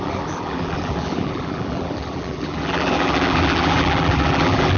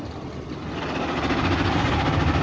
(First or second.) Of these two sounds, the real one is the second